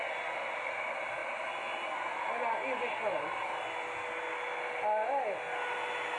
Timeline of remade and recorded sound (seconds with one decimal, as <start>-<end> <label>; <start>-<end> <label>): 0.0-6.2 recorded